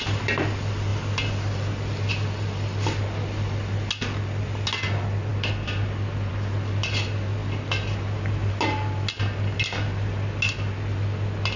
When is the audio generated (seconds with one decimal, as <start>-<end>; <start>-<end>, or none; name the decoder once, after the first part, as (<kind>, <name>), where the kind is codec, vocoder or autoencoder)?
none